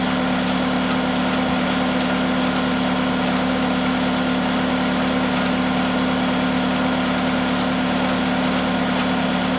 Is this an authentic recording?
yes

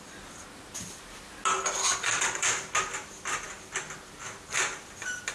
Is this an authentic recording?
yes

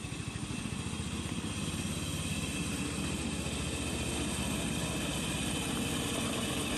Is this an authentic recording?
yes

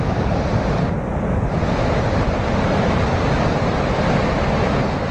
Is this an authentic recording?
yes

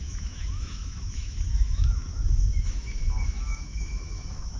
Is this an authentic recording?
no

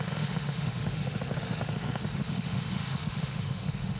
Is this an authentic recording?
no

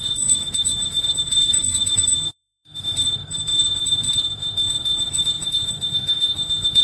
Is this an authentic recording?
no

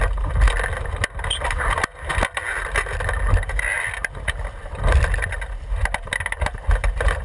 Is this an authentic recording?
yes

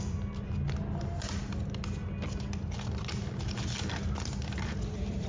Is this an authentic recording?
yes